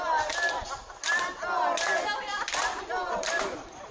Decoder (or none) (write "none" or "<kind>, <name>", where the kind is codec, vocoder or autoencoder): none